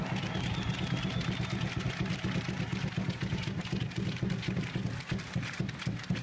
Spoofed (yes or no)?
no